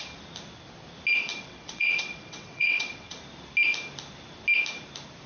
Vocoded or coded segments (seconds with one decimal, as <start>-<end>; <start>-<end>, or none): 1.3-3.2